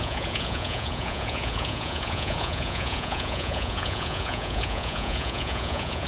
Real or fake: fake